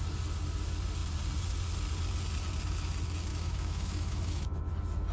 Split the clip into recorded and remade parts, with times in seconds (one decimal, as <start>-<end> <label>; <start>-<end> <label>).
0.0-3.3 recorded; 3.3-4.6 remade; 4.6-5.1 recorded